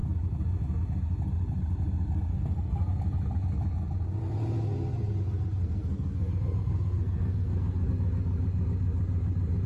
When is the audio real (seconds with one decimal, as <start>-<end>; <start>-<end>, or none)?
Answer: 0.0-2.3; 3.0-5.6; 7.9-9.7